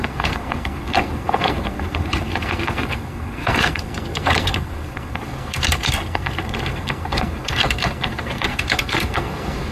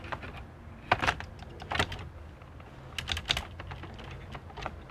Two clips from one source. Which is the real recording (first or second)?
second